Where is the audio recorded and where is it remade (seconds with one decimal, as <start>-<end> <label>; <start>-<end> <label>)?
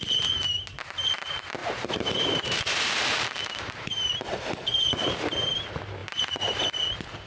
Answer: 0.0-1.6 recorded; 1.6-4.9 remade; 4.9-6.0 recorded; 6.0-6.6 remade; 6.6-7.3 recorded